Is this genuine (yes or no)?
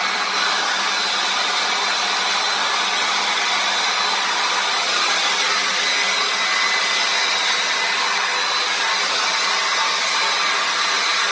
yes